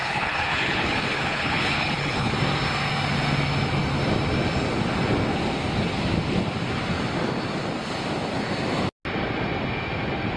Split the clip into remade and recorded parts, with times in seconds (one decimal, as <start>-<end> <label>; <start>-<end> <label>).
0.0-2.3 remade; 2.3-10.4 recorded